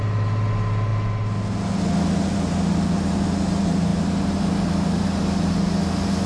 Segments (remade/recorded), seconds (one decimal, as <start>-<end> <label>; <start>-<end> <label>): 0.0-6.3 recorded